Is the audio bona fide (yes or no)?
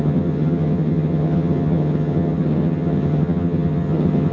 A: no